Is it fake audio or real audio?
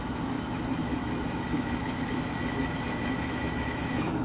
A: fake